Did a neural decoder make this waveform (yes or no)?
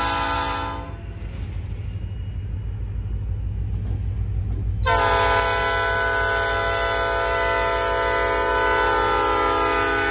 no